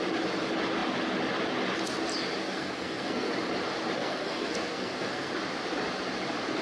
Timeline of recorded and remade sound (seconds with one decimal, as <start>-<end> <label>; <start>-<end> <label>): 0.0-2.4 recorded; 2.4-3.3 remade; 3.3-4.0 recorded; 4.0-5.3 remade; 5.3-6.6 recorded